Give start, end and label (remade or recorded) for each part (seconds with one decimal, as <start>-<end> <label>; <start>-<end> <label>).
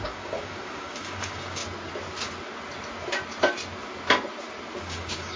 0.0-1.6 remade; 1.6-4.8 recorded; 4.8-5.4 remade